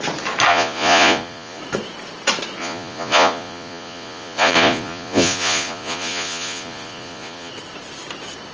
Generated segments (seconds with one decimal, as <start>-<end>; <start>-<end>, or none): 0.5-1.6; 2.6-7.5